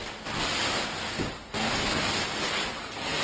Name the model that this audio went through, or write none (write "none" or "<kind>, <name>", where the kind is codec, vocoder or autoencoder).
none